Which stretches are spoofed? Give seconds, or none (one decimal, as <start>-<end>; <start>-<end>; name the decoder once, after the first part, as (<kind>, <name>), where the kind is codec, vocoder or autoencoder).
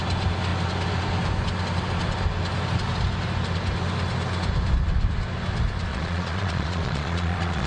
5.9-7.7 (vocoder, Vocos)